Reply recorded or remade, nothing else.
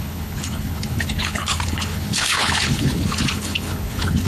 remade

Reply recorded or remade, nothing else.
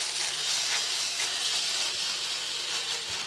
recorded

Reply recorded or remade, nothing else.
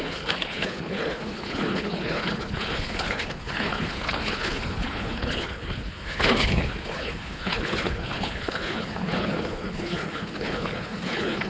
remade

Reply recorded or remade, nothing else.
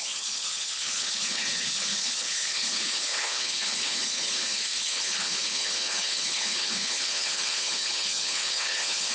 remade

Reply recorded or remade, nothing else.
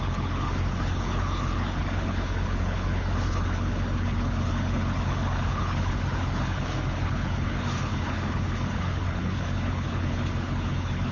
remade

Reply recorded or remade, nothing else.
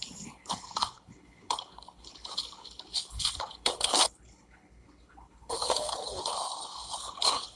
remade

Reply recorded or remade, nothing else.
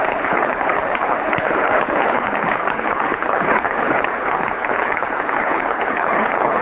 remade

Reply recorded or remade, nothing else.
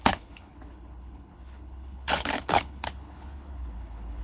remade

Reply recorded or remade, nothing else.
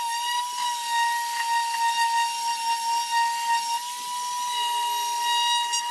recorded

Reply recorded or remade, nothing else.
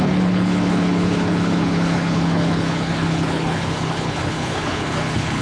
remade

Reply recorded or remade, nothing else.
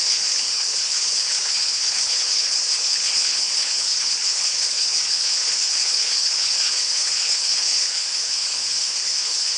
remade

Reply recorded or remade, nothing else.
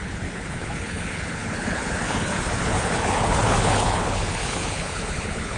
remade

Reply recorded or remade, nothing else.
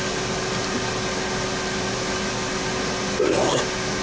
recorded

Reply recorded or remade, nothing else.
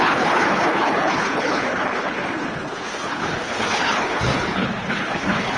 remade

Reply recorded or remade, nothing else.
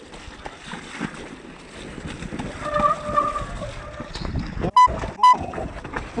recorded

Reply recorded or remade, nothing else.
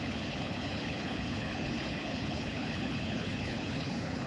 remade